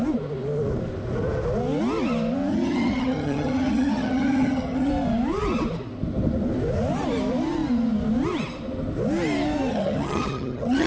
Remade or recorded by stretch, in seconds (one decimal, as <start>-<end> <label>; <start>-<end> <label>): 0.0-2.5 recorded; 2.5-4.9 remade; 4.9-9.7 recorded; 9.7-10.9 remade